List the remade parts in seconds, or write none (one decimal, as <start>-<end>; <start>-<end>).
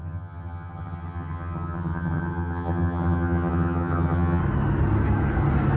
0.0-4.4